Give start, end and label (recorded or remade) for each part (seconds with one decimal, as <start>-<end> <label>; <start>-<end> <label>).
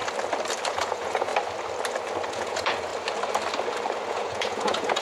0.0-0.7 recorded; 0.7-1.3 remade; 1.3-2.3 recorded; 2.3-2.9 remade; 2.9-4.1 recorded; 4.1-5.0 remade